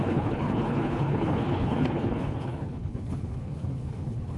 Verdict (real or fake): fake